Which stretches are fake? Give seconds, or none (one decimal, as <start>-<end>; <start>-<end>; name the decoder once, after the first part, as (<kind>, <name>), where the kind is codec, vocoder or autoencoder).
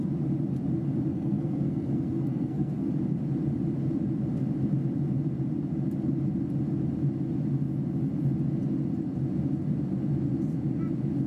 1.1-2.9 (codec, SNAC)